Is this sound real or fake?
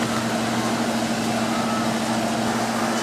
real